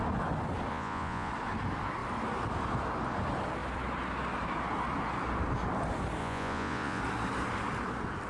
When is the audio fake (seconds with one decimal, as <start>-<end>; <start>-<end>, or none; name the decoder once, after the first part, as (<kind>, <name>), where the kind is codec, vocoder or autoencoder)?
0.7-1.3 (vocoder, Vocos); 6.2-7.0